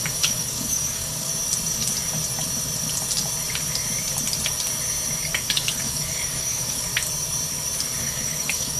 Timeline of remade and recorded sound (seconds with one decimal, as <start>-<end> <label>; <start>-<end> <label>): 0.0-1.3 remade; 1.3-5.3 recorded; 5.3-6.9 remade; 6.9-8.0 recorded; 8.0-8.8 remade